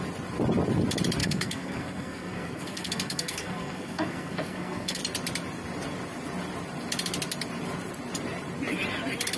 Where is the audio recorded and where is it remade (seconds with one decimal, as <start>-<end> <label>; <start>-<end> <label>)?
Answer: 0.0-1.2 recorded; 1.2-5.0 remade; 5.0-9.4 recorded